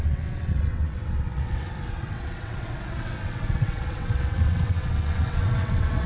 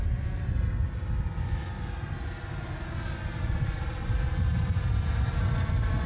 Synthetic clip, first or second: first